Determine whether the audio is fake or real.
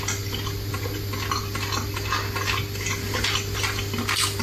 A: real